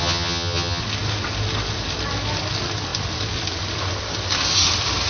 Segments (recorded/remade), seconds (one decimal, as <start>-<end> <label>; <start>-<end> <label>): 0.0-0.8 remade; 0.8-5.1 recorded